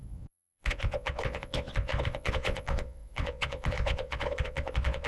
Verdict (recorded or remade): remade